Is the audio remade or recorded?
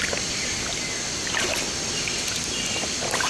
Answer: recorded